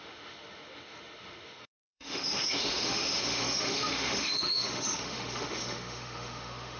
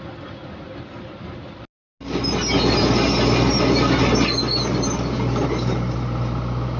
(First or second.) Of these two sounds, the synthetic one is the first